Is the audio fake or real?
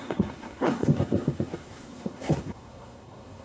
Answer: fake